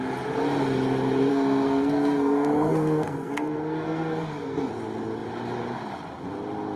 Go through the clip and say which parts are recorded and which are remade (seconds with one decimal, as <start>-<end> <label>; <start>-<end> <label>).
0.0-1.3 recorded; 1.3-4.7 remade; 4.7-6.8 recorded